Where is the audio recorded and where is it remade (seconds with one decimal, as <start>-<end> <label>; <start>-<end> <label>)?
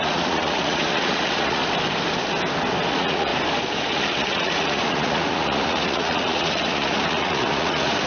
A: 0.0-1.6 remade; 1.6-2.9 recorded; 2.9-3.3 remade; 3.3-3.9 recorded; 3.9-8.1 remade